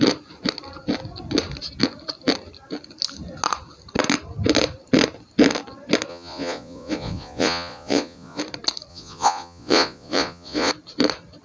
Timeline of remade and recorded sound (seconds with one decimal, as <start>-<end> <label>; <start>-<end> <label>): 0.0-6.1 recorded; 6.1-8.4 remade; 8.4-8.9 recorded; 8.9-10.7 remade; 10.7-11.4 recorded